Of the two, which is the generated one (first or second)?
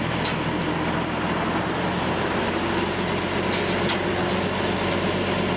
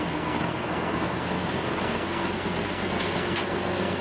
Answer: second